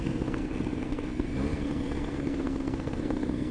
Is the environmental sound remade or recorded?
remade